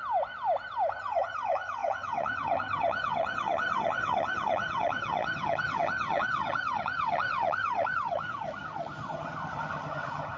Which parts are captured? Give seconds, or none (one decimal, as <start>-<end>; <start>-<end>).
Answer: 0.0-0.9